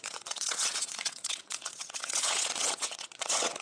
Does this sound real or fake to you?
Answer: fake